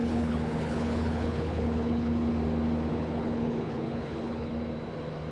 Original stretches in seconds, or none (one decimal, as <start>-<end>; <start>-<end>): 2.3-2.9; 4.5-5.3